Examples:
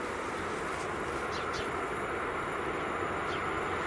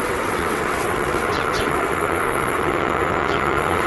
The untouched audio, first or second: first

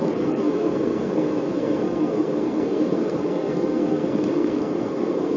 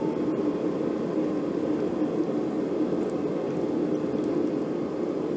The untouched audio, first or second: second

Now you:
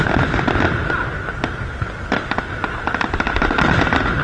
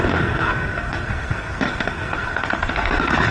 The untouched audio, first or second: first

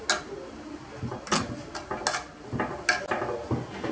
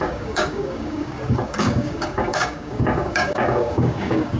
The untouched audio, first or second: first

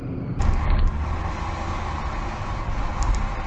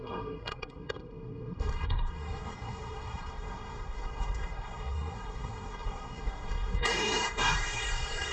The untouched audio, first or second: first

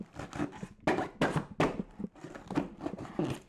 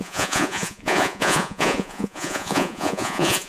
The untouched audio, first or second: first